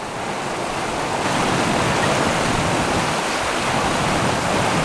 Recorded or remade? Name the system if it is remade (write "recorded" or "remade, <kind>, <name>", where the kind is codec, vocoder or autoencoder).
recorded